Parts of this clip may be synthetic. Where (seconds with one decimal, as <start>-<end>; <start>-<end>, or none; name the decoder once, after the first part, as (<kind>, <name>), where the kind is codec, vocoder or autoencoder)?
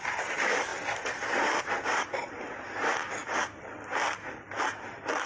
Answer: none